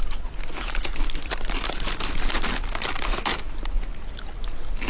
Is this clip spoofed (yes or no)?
no